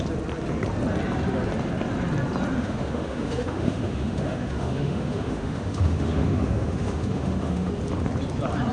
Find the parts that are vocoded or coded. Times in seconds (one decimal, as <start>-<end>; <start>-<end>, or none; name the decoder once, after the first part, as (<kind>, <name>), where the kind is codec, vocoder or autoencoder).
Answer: 2.6-7.7 (autoencoder, DAC-VAE)